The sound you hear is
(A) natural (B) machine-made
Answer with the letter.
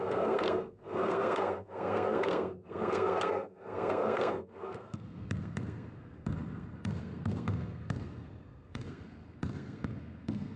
B